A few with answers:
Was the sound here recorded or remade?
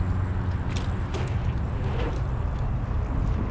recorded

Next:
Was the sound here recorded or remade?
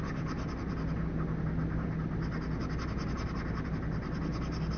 recorded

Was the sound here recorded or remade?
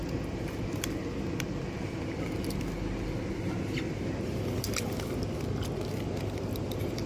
recorded